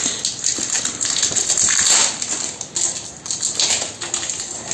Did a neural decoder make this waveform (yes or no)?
no